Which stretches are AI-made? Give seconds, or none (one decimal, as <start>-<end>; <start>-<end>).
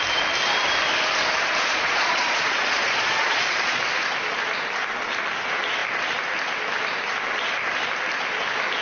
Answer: 1.7-3.8